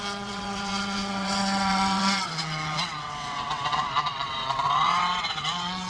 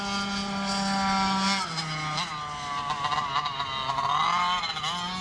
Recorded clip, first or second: second